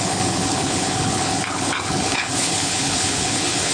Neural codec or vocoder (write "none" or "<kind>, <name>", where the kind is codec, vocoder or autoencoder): codec, HILCodec